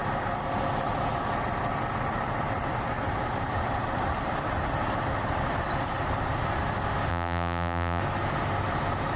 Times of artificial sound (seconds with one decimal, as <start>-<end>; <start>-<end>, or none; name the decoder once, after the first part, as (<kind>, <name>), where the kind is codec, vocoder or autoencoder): 7.1-8.0 (vocoder, BigVGAN v2)